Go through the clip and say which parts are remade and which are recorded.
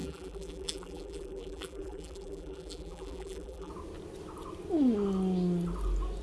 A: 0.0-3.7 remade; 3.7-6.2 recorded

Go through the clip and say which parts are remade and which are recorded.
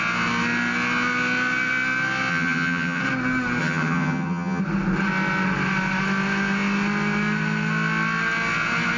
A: 0.0-2.3 recorded; 2.3-3.0 remade; 3.0-3.6 recorded; 3.6-4.6 remade; 4.6-9.0 recorded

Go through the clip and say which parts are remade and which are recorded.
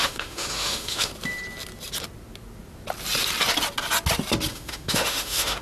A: 0.0-1.1 remade; 1.1-4.5 recorded; 4.5-5.6 remade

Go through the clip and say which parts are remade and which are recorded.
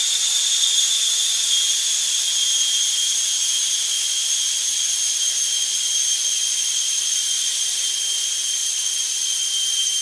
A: 0.0-10.0 recorded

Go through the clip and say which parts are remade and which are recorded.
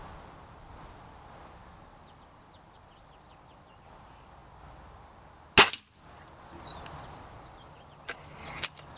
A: 0.0-9.0 recorded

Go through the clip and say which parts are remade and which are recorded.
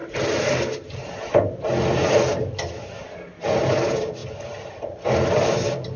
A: 0.0-6.0 recorded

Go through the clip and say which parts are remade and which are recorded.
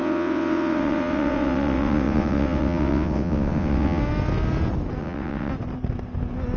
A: 0.0-4.0 remade; 4.0-5.0 recorded; 5.0-5.5 remade; 5.5-6.6 recorded